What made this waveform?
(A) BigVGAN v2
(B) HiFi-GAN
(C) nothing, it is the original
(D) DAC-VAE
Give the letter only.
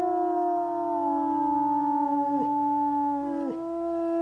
C